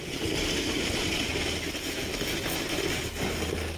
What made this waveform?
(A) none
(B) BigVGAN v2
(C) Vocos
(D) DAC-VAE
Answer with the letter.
A